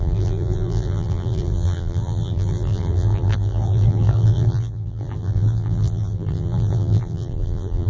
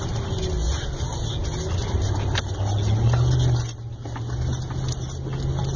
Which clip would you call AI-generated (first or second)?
first